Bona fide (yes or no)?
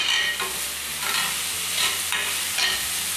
yes